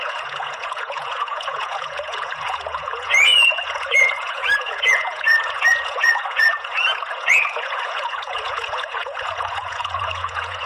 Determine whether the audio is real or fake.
fake